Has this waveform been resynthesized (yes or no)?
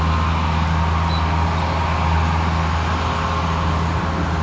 no